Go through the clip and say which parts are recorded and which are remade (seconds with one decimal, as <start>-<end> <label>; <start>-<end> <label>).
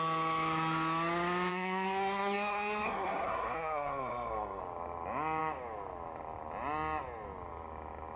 0.0-1.5 recorded; 1.5-4.6 remade; 4.6-8.2 recorded